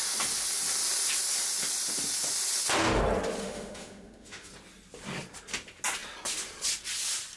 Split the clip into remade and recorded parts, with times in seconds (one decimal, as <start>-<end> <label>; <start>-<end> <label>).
0.0-3.4 recorded; 3.4-4.5 remade; 4.5-7.4 recorded